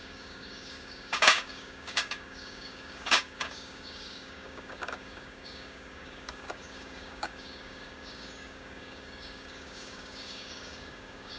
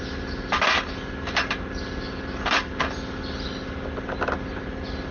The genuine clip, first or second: second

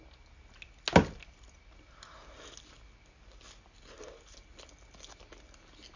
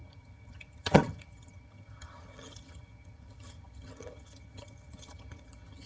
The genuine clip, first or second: first